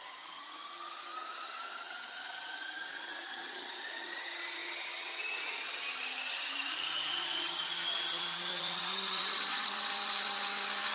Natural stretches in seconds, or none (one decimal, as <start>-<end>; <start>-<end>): none